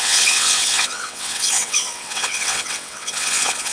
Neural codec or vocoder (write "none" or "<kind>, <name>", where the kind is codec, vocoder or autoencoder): vocoder, WaveNeXt